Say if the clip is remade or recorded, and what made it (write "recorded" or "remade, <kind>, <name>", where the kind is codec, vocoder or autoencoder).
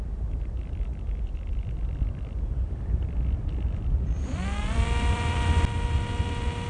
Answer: remade, vocoder, BigVGAN v2